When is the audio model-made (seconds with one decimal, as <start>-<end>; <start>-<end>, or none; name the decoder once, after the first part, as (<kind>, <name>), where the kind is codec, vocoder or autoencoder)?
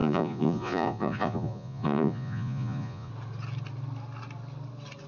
0.0-3.1 (vocoder, Vocos)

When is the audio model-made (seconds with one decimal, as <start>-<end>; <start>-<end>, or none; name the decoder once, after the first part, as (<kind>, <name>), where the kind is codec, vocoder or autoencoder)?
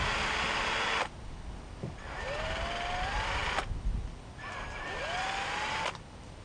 none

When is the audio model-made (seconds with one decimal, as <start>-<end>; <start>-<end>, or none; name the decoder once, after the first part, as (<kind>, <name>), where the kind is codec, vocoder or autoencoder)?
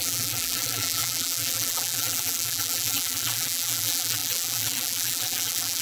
0.0-5.8 (vocoder, BigVGAN v2)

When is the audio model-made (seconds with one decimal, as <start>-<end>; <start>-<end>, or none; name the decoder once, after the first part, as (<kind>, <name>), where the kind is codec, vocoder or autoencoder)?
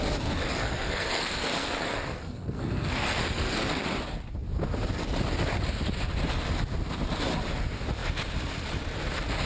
0.5-3.9 (codec, SNAC)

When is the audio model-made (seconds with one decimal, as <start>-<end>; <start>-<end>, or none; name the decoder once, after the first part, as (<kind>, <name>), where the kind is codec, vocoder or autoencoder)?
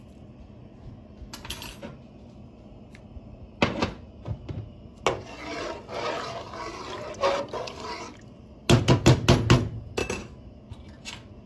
none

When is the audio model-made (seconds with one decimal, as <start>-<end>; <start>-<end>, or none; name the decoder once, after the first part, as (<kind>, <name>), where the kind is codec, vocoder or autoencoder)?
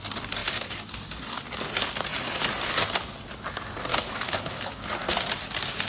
3.9-4.9 (autoencoder, DAC-VAE)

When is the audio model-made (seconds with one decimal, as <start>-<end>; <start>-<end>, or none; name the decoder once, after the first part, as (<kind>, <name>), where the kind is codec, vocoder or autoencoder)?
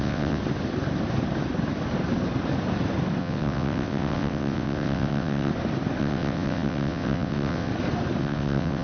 0.0-0.4 (vocoder, WaveNeXt); 3.2-5.5; 6.0-7.7; 8.2-8.8